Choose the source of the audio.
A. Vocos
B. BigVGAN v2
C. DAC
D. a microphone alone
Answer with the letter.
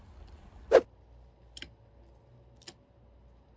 D